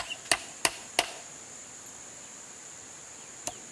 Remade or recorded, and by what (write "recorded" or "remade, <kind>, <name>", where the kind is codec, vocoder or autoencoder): remade, vocoder, BigVGAN v2